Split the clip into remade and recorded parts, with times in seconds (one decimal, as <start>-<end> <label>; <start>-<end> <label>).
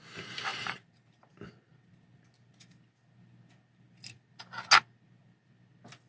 0.0-0.5 recorded; 0.5-1.2 remade; 1.2-6.1 recorded